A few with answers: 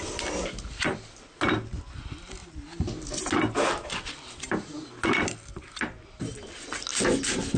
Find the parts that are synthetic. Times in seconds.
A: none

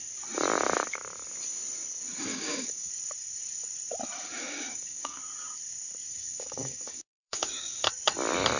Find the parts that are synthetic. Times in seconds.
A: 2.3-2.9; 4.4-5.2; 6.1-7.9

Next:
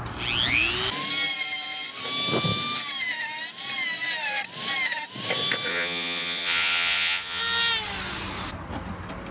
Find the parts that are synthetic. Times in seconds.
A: 5.7-7.4

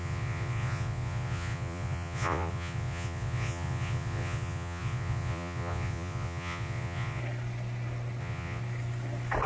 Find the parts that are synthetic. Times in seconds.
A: 0.0-7.2; 8.2-8.6